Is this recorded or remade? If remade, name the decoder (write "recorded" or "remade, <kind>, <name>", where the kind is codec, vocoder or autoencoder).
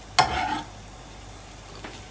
recorded